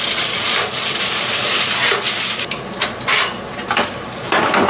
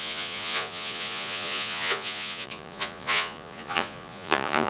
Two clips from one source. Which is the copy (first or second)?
second